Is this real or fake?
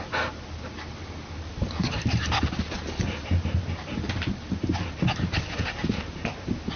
real